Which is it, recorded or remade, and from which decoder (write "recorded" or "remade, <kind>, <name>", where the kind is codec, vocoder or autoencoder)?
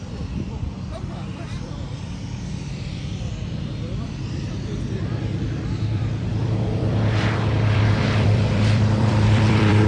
remade, vocoder, BigVGAN v2